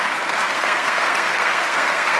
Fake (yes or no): yes